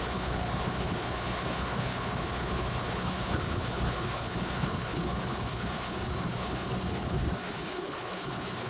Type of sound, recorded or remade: remade